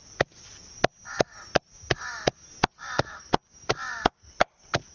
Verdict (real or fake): real